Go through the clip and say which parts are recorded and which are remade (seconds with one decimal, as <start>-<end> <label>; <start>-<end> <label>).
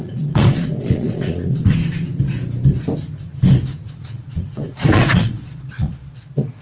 0.0-1.8 remade; 1.8-3.9 recorded; 3.9-6.6 remade